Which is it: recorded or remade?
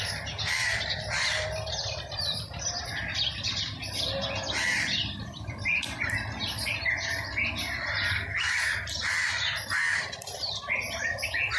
remade